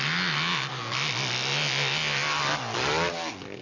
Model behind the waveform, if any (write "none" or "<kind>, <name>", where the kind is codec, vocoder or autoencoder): none